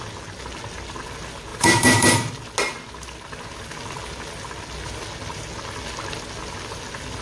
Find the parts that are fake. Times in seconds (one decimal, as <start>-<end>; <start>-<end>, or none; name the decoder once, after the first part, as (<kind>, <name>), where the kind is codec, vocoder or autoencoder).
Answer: 1.5-2.3 (vocoder, BigVGAN v2)